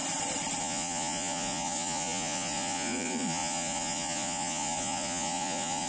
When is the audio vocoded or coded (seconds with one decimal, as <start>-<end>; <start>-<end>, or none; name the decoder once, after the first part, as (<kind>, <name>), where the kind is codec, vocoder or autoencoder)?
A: 0.6-5.9 (vocoder, Vocos)